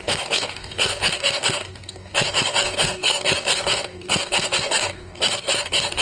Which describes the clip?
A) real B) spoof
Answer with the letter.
B